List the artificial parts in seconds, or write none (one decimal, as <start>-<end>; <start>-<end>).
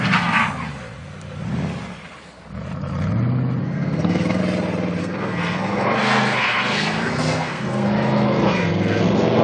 0.0-0.4; 3.6-4.4; 5.0-9.4